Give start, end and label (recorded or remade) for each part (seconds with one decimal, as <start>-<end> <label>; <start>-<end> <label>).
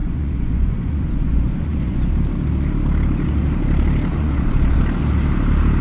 0.0-2.1 remade; 2.1-4.1 recorded; 4.1-4.8 remade; 4.8-5.8 recorded